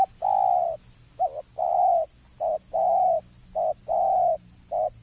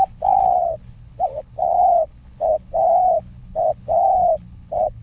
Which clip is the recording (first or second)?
first